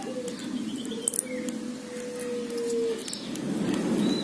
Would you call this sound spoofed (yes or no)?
no